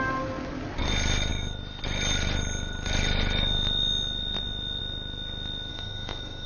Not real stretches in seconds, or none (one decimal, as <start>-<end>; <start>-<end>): 5.7-6.5